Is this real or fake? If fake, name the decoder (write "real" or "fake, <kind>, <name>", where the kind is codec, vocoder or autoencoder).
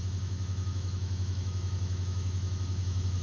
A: fake, autoencoder, DAC-VAE